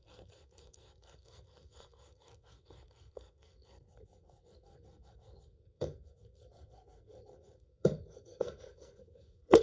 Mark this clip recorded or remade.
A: remade